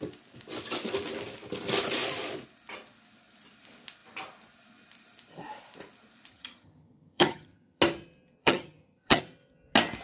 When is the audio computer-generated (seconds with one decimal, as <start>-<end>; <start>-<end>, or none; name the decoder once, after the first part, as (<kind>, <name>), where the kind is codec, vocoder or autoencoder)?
6.3-7.8 (vocoder, HiFi-GAN); 8.4-9.2